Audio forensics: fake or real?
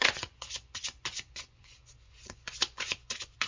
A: fake